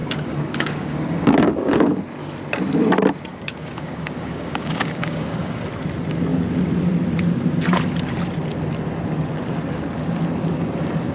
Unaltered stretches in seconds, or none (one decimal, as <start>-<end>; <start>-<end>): 2.0-3.3; 5.7-11.1